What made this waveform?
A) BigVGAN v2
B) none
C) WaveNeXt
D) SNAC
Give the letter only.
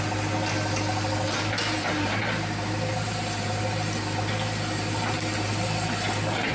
B